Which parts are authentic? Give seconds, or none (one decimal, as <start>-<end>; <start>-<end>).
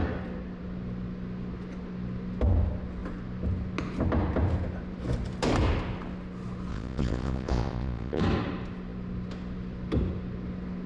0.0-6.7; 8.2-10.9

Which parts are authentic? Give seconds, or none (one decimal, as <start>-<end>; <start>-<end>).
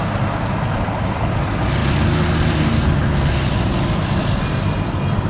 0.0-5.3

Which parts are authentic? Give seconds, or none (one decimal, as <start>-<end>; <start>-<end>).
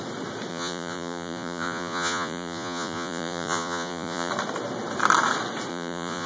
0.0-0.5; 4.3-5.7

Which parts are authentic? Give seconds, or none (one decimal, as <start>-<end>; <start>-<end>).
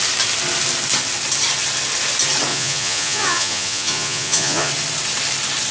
0.0-2.5; 4.7-5.7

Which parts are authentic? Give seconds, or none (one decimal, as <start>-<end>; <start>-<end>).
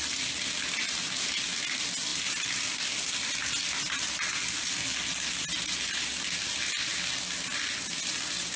0.0-8.6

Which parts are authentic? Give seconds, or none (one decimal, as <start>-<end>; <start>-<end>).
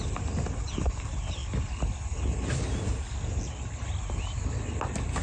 0.0-5.2